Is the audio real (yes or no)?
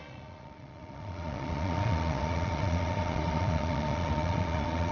no